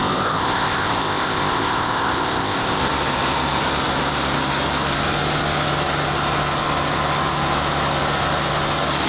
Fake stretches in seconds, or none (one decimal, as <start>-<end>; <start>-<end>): 0.0-2.8